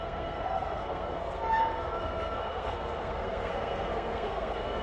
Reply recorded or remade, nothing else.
remade